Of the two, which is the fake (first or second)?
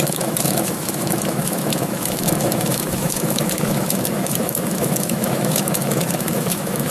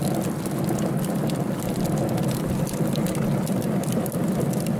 first